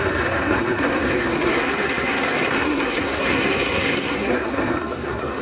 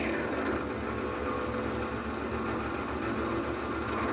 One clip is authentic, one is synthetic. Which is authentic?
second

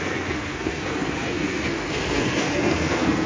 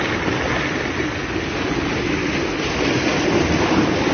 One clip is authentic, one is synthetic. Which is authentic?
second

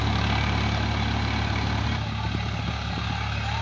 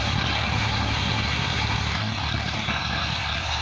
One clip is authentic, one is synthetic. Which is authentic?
first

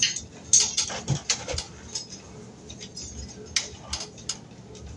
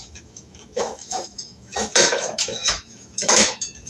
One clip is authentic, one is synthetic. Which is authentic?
first